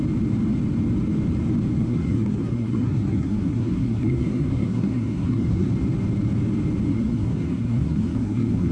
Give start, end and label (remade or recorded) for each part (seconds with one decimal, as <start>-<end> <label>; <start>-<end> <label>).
0.0-1.8 recorded; 1.8-5.7 remade; 5.7-6.9 recorded; 6.9-8.7 remade